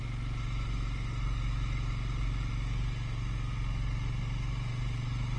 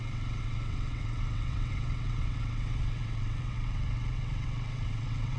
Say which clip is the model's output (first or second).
second